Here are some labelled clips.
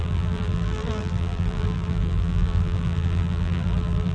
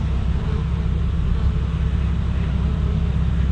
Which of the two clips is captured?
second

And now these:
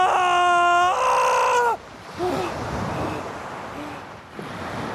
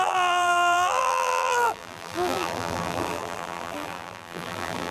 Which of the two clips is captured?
first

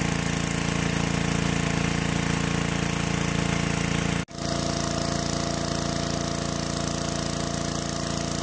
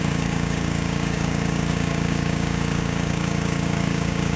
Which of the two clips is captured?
first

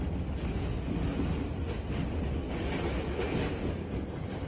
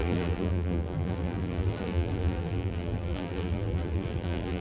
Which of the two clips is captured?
first